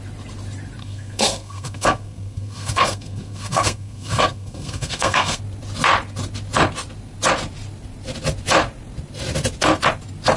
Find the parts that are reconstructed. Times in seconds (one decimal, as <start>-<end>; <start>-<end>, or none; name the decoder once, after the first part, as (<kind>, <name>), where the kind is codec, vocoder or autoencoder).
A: 0.8-5.4 (codec, SNAC)